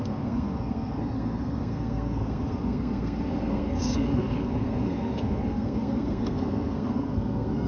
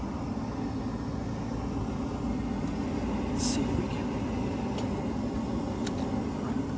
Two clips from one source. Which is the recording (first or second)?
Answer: second